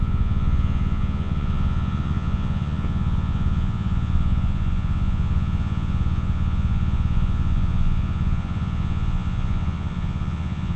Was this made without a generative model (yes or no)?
no